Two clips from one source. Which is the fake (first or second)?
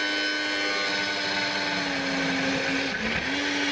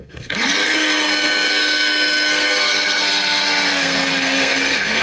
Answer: second